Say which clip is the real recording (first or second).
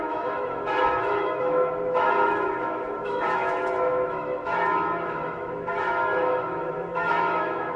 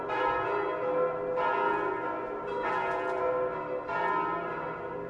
second